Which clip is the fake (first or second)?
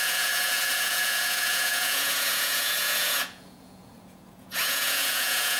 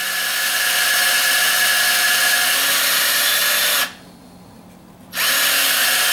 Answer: first